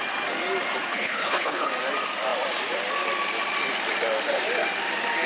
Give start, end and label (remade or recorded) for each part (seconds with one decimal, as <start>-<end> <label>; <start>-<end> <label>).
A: 0.0-0.9 recorded; 0.9-1.7 remade; 1.7-5.3 recorded